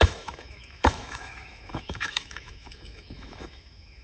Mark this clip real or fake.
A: fake